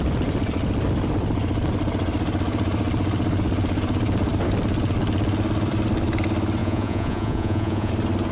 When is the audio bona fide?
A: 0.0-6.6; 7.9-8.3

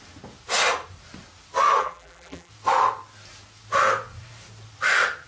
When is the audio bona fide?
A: 0.0-1.8; 2.5-5.3

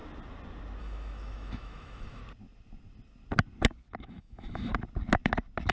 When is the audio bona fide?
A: 0.0-0.8; 2.2-4.0; 4.7-5.7

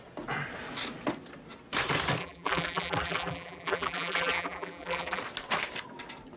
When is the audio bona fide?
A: 0.0-2.2; 5.2-6.4